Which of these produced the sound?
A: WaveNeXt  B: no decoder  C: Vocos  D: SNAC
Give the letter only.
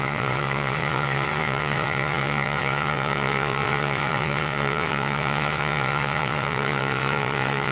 A